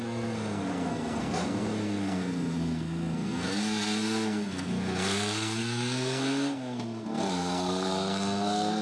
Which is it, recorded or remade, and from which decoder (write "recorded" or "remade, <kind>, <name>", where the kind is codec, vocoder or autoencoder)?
remade, codec, SNAC